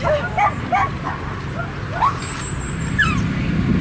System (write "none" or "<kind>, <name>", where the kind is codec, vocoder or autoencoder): none